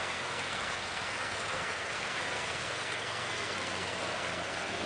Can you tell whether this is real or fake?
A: fake